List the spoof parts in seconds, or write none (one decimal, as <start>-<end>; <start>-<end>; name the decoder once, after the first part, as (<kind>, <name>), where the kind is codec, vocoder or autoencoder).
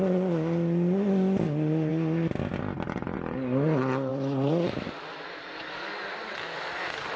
4.1-4.8 (vocoder, Vocos)